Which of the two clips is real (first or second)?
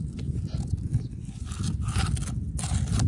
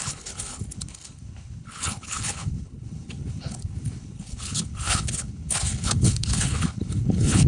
first